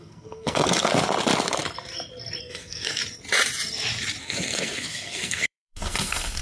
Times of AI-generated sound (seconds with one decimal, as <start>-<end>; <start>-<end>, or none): 0.0-0.9; 2.4-3.0; 4.2-6.4